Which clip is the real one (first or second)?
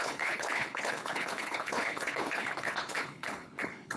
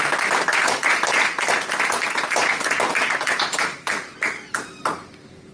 second